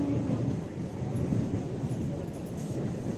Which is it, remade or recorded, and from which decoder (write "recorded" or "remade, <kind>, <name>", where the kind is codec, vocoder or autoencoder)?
recorded